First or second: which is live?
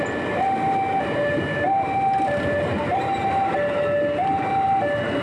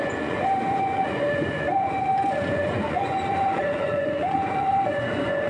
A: first